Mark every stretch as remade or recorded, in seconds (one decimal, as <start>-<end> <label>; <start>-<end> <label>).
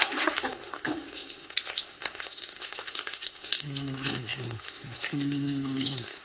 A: 0.0-6.2 remade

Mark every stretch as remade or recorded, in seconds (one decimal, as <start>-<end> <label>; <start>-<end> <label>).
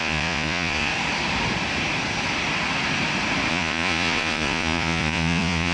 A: 0.0-0.9 remade; 0.9-3.5 recorded; 3.5-5.7 remade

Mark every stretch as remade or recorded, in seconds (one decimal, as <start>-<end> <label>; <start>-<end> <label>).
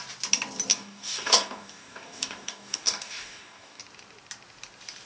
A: 0.0-0.7 recorded; 0.7-3.8 remade; 3.8-5.1 recorded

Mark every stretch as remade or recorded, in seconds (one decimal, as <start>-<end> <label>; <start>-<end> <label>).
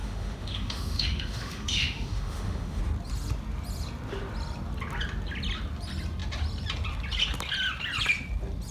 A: 0.0-2.8 remade; 2.8-8.7 recorded